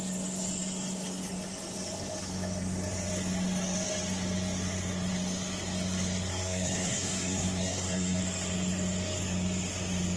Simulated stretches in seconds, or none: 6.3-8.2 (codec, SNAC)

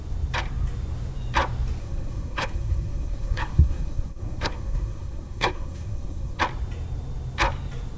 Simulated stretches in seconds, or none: 1.8-6.4 (codec, SNAC)

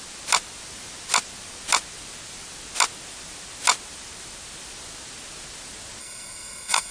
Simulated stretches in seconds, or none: 6.0-6.9 (codec, SNAC)